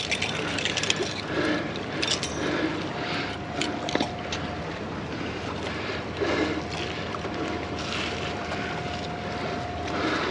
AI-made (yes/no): no